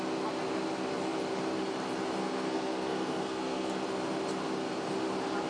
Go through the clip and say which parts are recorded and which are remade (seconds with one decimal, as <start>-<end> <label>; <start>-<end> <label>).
0.0-2.2 recorded; 2.2-3.7 remade; 3.7-5.5 recorded